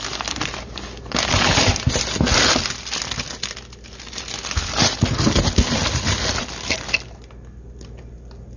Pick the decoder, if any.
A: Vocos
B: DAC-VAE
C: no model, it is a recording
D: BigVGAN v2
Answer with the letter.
C